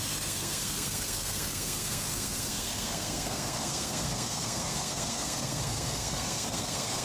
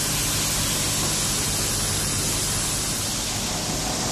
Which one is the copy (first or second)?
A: first